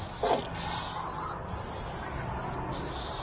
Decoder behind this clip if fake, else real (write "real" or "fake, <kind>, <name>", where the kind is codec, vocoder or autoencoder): real